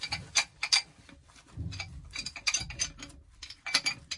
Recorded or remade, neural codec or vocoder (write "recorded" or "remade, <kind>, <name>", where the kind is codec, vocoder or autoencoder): recorded